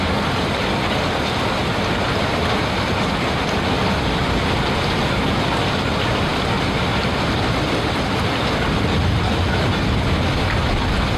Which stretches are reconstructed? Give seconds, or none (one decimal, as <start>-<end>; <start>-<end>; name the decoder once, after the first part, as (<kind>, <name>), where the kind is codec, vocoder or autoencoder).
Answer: none

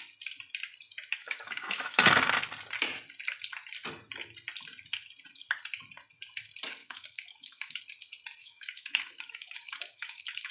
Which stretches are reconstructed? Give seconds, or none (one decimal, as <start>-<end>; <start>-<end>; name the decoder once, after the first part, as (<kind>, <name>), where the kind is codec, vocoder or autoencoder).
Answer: 1.2-2.0 (autoencoder, DAC-VAE); 6.8-7.8; 8.4-10.5

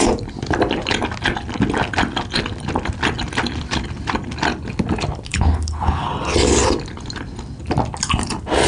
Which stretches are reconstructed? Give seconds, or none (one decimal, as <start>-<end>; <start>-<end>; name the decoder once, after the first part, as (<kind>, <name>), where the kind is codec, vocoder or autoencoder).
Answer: 5.3-6.1 (codec, HILCodec)

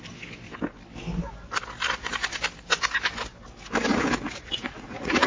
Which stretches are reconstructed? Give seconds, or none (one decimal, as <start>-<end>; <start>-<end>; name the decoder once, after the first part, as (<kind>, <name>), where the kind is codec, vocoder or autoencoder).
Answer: 3.9-5.3 (vocoder, Vocos)

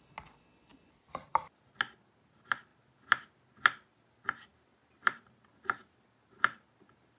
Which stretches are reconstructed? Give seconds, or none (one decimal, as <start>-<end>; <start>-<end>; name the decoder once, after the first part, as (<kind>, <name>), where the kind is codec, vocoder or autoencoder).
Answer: none

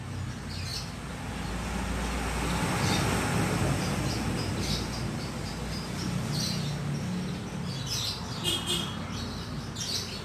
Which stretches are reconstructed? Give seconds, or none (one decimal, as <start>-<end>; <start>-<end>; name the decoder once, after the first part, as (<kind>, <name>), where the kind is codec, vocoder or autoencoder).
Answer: 4.4-5.5 (vocoder, BigVGAN v2)

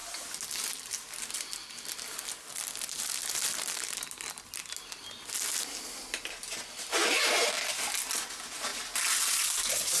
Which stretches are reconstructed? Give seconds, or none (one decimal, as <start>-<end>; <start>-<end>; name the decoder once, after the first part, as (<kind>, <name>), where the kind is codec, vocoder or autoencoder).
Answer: none

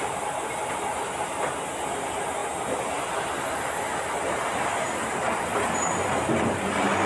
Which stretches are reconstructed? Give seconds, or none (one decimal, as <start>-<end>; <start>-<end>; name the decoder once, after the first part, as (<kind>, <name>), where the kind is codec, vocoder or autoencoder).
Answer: none